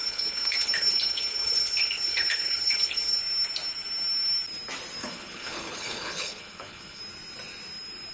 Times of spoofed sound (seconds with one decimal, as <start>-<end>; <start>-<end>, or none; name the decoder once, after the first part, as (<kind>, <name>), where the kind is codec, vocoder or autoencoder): 0.0-3.2 (codec, HILCodec); 5.0-7.0